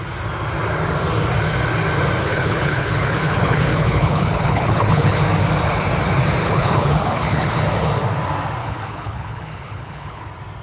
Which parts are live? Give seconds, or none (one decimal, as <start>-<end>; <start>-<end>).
0.0-2.2; 5.2-6.4; 7.6-8.6; 10.2-10.6